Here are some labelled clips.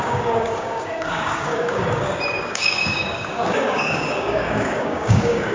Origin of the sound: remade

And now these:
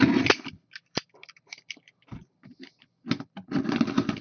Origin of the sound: recorded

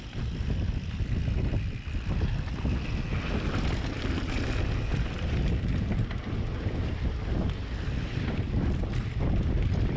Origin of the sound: recorded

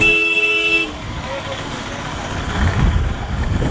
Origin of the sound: remade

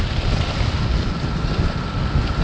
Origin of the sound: recorded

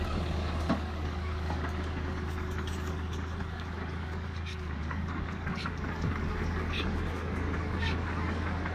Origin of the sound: remade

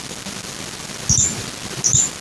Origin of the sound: recorded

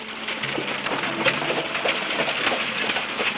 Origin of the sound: recorded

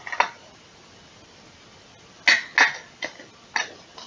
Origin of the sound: recorded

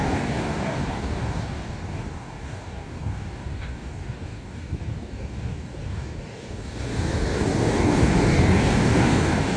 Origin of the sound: remade